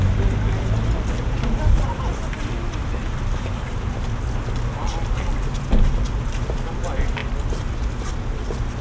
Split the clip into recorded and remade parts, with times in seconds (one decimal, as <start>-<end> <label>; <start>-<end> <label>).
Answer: 0.0-8.8 recorded